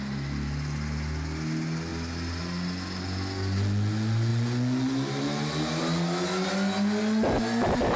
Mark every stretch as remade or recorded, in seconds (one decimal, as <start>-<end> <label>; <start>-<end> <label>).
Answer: 0.0-8.0 recorded